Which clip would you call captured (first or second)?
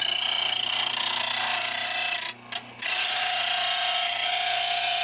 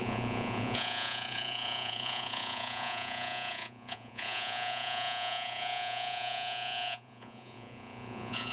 first